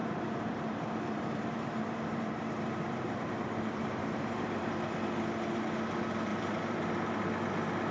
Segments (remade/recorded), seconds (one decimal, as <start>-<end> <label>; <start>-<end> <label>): 0.0-4.7 remade; 4.7-6.3 recorded; 6.3-7.2 remade; 7.2-7.9 recorded